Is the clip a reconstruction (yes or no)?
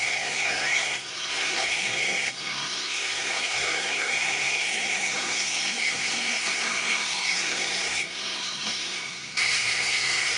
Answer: yes